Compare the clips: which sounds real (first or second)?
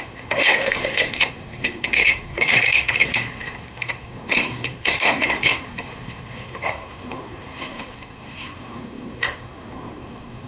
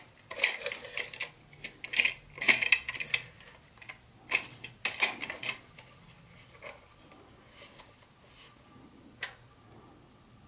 second